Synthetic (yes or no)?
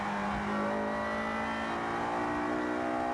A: no